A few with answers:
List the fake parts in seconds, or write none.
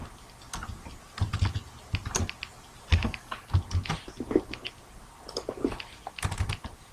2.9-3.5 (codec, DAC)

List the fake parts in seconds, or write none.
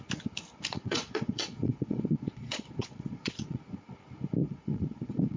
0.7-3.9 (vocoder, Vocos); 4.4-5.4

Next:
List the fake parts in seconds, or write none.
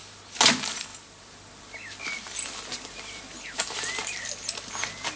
none